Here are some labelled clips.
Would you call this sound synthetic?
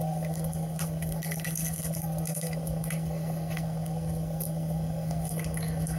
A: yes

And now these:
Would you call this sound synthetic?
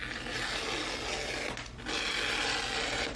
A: no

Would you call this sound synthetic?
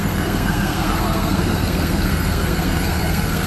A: yes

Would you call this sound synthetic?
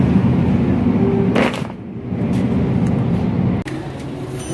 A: no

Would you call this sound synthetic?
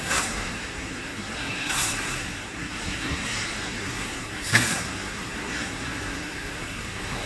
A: yes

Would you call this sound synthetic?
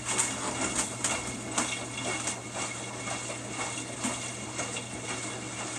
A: no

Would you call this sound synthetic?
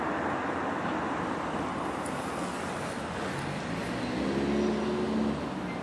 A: no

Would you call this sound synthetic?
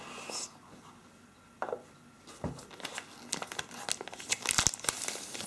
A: no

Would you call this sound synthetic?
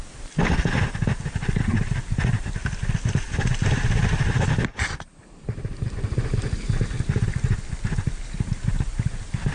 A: no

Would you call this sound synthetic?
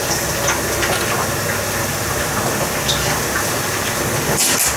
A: no